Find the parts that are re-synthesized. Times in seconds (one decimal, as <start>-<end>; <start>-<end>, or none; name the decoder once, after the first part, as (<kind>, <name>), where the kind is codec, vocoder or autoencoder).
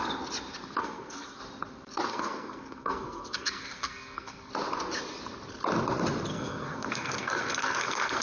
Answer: 0.8-1.4 (codec, SNAC); 2.1-4.5; 6.3-8.2